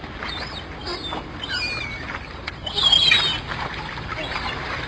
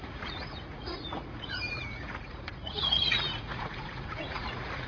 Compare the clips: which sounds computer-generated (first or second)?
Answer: second